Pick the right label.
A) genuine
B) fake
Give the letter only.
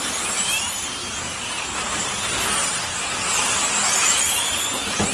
A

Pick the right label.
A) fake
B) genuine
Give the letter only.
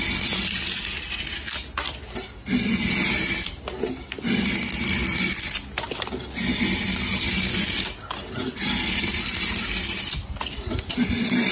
B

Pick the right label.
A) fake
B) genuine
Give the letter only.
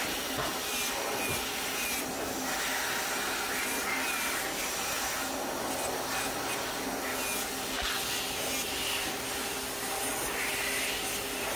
B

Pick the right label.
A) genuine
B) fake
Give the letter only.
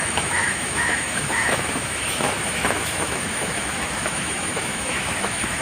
B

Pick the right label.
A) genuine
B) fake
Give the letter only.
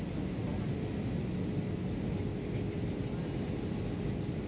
A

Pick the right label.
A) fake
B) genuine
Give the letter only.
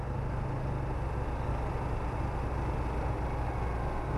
B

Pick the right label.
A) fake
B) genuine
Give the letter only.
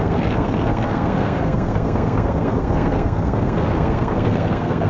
A